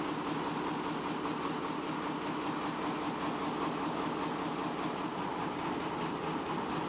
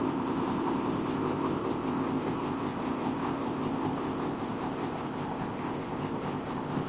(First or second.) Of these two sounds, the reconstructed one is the second